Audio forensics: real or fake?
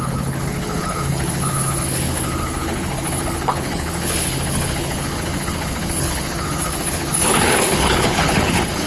fake